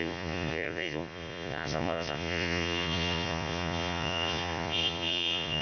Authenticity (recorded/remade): remade